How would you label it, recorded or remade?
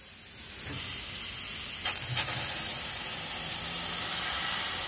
recorded